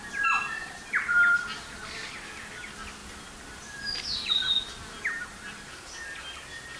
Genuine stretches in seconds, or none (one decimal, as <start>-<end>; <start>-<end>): 0.0-0.6; 2.3-3.0; 6.2-6.8